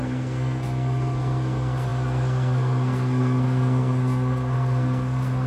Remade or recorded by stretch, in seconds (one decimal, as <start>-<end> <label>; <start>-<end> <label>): 0.0-5.5 remade